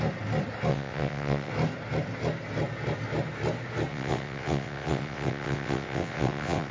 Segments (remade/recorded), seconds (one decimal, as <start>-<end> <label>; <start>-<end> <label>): 0.0-0.7 recorded; 0.7-1.5 remade; 1.5-3.9 recorded; 3.9-6.7 remade

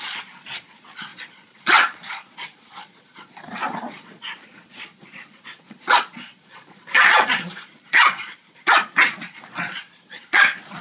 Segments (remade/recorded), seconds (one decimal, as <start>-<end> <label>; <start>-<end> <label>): 0.0-10.8 remade